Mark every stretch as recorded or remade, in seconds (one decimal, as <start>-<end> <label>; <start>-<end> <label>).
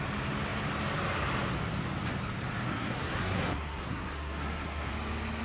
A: 0.0-2.7 recorded; 2.7-4.9 remade; 4.9-5.4 recorded